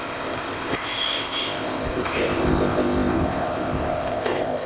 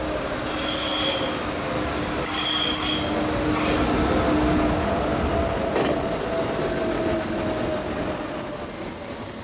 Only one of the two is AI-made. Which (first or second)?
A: first